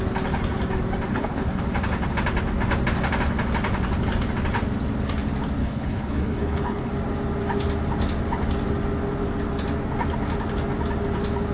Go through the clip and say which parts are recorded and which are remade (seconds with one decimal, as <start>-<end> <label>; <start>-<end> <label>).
0.0-1.1 recorded; 1.1-1.6 remade; 1.6-5.6 recorded; 5.6-6.9 remade; 6.9-11.5 recorded